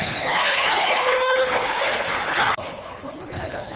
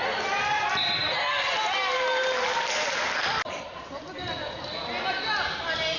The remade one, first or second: first